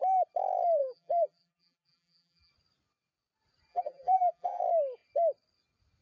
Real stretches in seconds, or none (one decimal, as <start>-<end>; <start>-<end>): 0.0-0.8; 2.5-3.7; 4.6-6.0